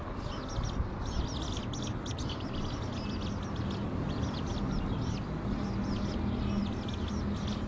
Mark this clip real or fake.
real